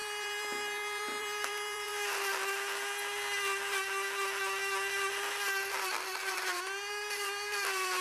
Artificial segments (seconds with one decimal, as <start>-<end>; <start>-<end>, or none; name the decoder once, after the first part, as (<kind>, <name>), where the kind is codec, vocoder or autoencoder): 0.0-1.9 (vocoder, BigVGAN v2); 5.8-8.0